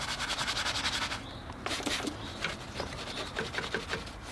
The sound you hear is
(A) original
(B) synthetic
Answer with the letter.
A